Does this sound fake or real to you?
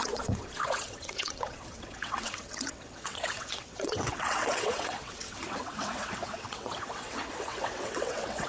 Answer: fake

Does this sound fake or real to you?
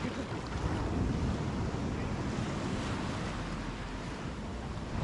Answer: real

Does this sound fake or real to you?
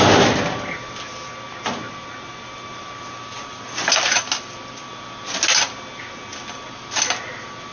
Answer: real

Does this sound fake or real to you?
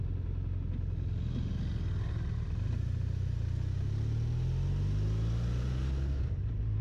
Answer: real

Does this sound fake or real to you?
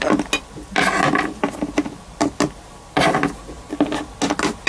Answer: real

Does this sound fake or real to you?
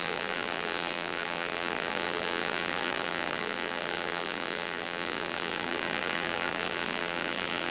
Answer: fake